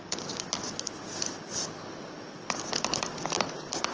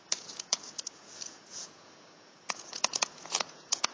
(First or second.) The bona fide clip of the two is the first